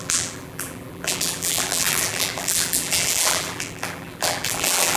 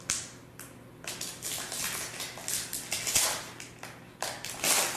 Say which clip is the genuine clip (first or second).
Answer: second